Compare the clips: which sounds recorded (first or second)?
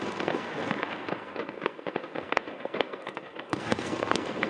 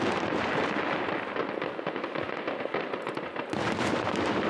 second